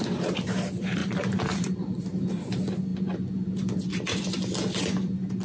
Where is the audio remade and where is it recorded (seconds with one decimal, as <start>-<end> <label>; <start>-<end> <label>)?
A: 0.0-1.0 recorded; 1.0-2.0 remade; 2.0-5.4 recorded

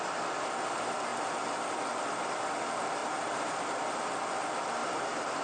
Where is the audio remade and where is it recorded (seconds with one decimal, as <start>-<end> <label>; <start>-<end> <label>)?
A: 0.0-3.0 recorded; 3.0-3.8 remade; 3.8-4.8 recorded; 4.8-5.4 remade

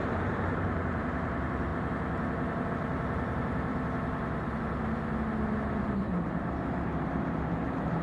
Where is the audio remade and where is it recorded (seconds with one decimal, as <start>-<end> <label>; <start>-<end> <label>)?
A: 0.0-1.7 remade; 1.7-2.7 recorded; 2.7-3.7 remade; 3.7-5.8 recorded; 5.8-8.0 remade

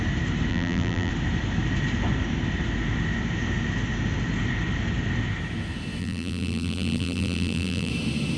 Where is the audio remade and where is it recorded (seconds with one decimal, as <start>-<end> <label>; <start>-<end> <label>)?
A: 0.0-0.5 recorded; 0.5-1.1 remade; 1.1-6.0 recorded; 6.0-7.9 remade; 7.9-8.4 recorded